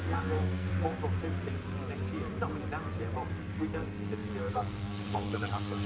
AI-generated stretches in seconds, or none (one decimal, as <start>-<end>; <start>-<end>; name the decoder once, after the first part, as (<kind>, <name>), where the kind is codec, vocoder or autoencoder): 0.0-0.7 (codec, SNAC); 3.4-5.9